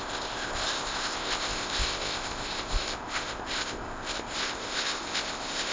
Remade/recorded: remade